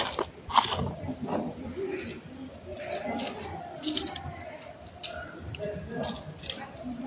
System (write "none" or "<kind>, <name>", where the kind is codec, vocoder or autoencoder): none